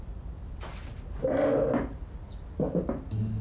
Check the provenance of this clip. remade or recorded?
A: recorded